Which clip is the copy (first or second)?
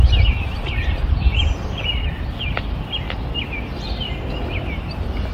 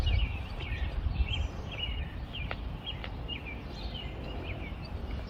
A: second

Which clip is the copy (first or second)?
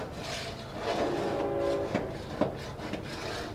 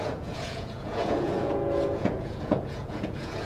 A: second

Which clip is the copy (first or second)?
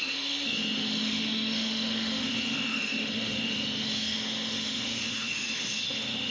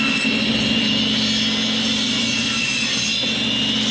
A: first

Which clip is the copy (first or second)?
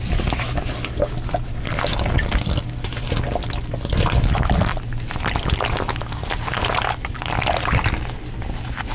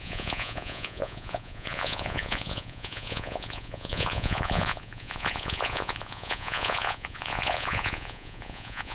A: second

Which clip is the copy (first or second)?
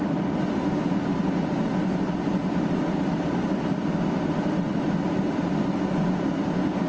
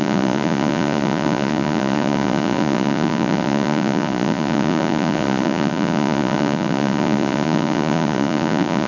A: second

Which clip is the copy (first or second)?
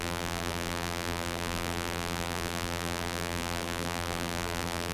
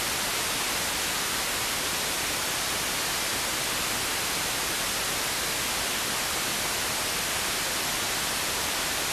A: first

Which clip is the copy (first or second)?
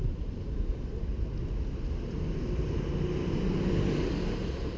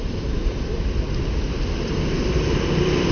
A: second